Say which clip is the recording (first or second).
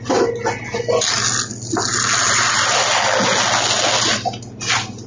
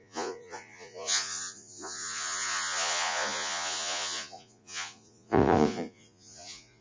first